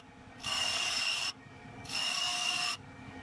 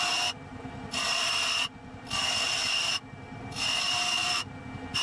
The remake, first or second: first